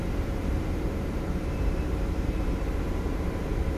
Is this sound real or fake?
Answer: fake